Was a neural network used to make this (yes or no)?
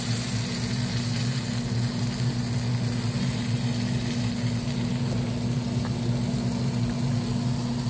no